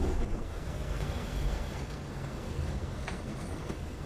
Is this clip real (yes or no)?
no